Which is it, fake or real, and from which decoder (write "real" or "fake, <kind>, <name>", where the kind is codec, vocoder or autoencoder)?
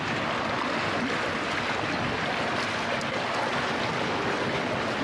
real